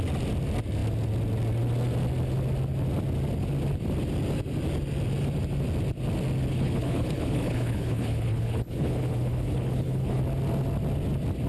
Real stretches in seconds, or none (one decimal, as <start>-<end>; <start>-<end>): 0.0-6.5; 10.2-11.5